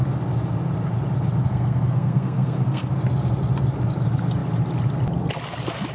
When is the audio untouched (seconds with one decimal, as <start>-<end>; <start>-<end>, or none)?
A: 0.0-1.5; 2.8-5.9